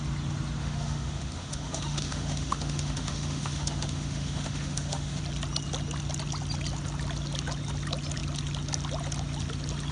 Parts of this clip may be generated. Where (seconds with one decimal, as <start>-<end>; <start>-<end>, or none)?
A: 0.6-5.2

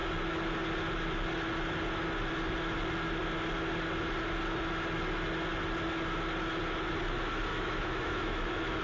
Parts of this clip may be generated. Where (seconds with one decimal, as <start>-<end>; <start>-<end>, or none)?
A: 7.5-8.8

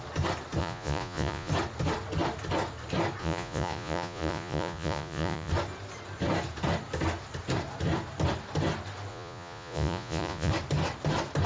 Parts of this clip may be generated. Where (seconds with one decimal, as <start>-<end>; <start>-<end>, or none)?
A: 0.6-1.5; 3.2-5.5; 9.1-10.5

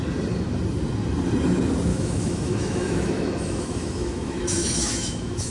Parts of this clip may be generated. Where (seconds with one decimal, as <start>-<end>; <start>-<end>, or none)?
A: 1.9-5.5

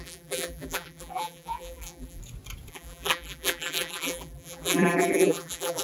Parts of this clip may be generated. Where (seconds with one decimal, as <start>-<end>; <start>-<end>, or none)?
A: 0.0-2.2; 2.7-5.8

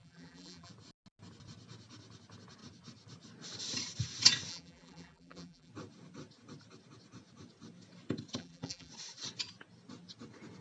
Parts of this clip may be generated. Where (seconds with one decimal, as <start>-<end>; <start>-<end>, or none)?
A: 0.0-0.7; 4.5-5.7; 8.4-8.9

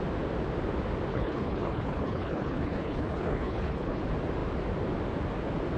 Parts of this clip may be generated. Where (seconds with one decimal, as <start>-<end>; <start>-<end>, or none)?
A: 1.1-4.0